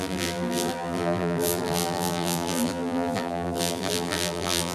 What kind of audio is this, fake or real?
fake